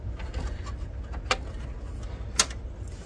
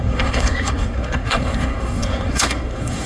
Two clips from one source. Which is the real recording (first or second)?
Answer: first